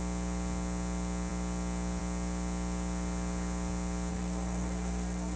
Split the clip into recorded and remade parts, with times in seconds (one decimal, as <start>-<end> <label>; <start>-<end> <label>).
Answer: 0.0-4.1 recorded; 4.1-5.4 remade